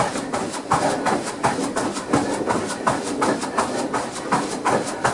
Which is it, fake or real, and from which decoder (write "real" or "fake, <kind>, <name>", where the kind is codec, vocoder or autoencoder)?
real